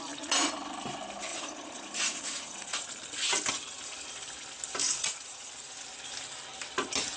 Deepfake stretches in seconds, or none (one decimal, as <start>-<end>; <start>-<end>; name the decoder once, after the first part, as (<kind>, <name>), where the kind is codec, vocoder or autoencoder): 1.3-2.9 (vocoder, Vocos); 4.8-5.5